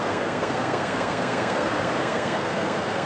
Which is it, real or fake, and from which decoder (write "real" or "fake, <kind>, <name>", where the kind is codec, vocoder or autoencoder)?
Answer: fake, codec, SNAC